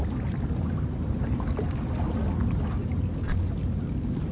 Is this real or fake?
real